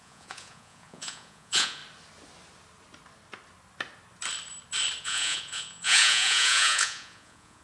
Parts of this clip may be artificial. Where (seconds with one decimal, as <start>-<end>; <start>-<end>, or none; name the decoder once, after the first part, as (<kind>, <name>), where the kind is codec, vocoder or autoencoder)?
0.0-1.8 (vocoder, Vocos); 5.0-7.6